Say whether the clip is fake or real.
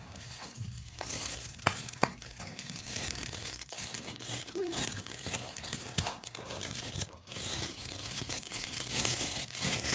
fake